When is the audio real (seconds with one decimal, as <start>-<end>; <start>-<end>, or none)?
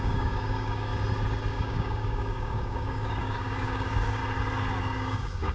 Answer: 0.9-1.5; 4.2-4.8